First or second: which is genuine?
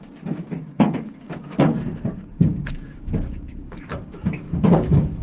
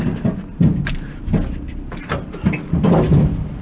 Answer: second